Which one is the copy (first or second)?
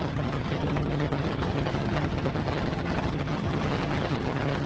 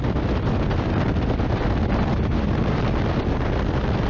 first